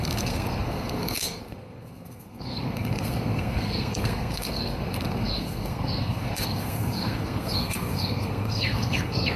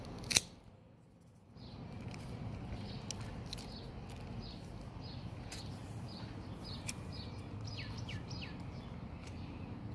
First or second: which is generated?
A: first